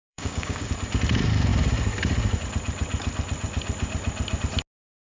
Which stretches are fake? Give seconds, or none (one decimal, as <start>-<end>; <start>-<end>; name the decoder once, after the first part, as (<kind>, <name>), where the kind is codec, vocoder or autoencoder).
0.0-0.7 (codec, DAC)